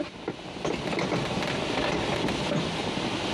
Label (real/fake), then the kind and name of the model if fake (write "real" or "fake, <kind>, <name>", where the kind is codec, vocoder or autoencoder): real